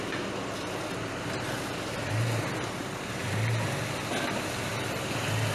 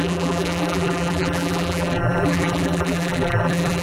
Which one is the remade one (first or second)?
second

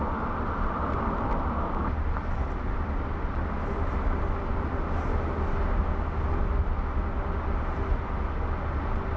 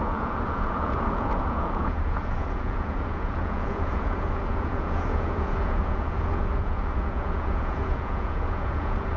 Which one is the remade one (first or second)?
second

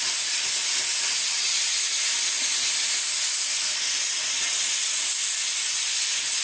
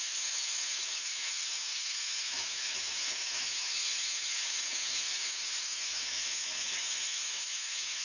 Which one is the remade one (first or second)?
second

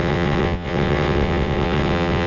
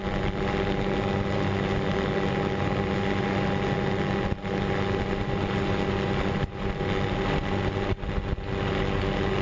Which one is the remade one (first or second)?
first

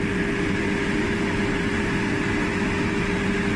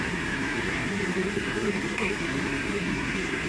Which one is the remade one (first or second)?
second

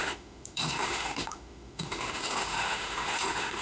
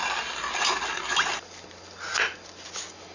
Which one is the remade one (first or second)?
first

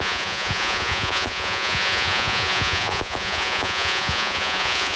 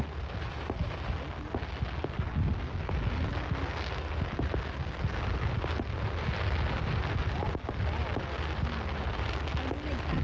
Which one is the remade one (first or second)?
first